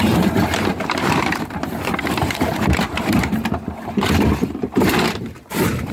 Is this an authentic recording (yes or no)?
no